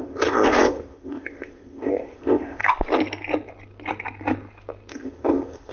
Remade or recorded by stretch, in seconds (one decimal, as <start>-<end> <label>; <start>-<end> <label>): 0.0-2.6 remade; 2.6-4.9 recorded; 4.9-5.7 remade